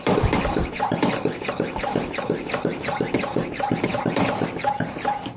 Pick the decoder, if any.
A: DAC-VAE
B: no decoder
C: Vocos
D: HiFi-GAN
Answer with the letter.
B